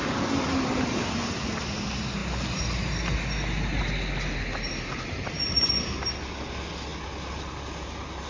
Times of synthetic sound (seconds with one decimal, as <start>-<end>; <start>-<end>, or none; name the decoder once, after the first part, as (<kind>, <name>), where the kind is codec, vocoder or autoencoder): none